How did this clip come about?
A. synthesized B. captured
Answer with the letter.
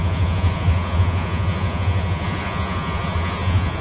A